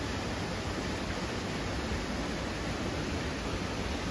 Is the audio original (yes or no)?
yes